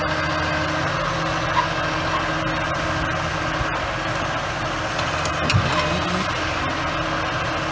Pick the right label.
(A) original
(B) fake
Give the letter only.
A